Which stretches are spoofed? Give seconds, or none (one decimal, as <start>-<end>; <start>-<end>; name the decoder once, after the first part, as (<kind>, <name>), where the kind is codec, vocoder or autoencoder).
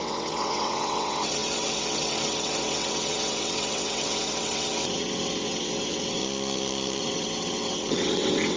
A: 0.0-6.2 (vocoder, WaveNeXt); 7.0-8.6